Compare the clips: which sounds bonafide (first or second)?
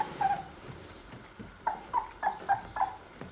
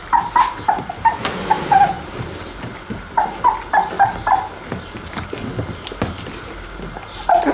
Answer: second